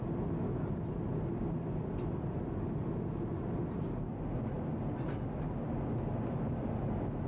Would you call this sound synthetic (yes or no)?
no